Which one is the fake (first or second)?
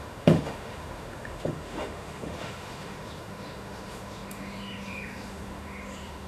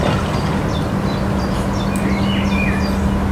first